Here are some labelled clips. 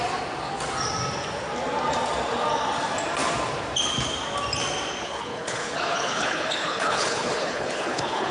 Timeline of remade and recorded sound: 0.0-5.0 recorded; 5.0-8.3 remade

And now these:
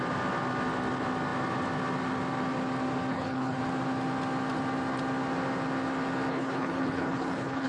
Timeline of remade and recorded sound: 0.0-3.1 recorded; 3.1-3.6 remade; 3.6-6.3 recorded; 6.3-7.7 remade

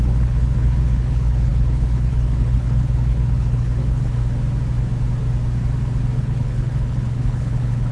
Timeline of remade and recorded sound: 0.0-4.2 remade; 4.2-6.2 recorded; 6.2-7.9 remade